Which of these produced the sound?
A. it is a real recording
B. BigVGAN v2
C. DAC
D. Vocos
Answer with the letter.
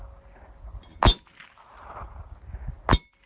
A